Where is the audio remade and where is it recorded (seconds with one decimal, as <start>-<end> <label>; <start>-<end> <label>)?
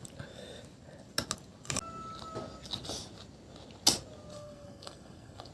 0.0-4.3 recorded; 4.3-5.5 remade